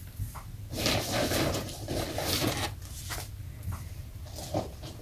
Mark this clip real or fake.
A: real